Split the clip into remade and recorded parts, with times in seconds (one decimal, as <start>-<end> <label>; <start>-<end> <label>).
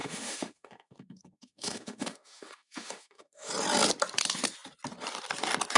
0.0-3.5 remade; 3.5-5.8 recorded